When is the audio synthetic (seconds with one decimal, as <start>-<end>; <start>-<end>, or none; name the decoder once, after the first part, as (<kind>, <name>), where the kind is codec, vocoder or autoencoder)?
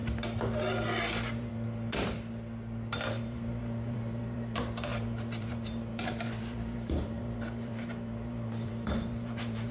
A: 1.1-1.5 (vocoder, BigVGAN v2); 3.1-9.7